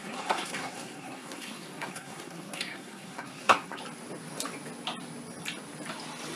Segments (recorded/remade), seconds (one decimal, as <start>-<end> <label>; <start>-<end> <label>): 0.0-3.8 remade; 3.8-6.4 recorded

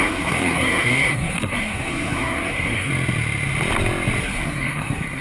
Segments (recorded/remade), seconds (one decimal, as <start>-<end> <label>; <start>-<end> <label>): 0.0-2.9 remade; 2.9-4.2 recorded; 4.2-5.2 remade

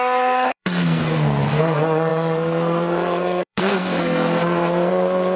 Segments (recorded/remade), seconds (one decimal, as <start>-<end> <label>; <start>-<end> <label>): 0.0-5.4 remade

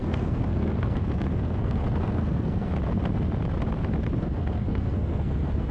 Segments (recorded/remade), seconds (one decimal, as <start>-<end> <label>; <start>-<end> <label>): 0.0-2.7 remade; 2.7-4.2 recorded; 4.2-5.7 remade

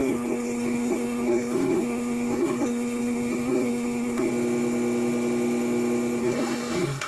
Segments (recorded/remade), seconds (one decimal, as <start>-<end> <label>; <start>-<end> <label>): 0.0-4.3 remade; 4.3-6.2 recorded; 6.2-7.1 remade